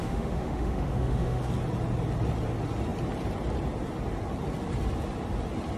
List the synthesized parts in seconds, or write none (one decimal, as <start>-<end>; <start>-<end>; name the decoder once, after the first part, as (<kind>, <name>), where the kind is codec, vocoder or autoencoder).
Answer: 0.0-1.4 (autoencoder, DAC-VAE)